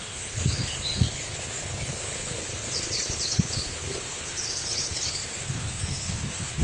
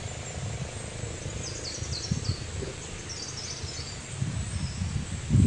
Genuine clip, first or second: second